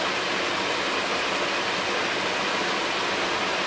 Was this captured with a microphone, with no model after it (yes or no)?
yes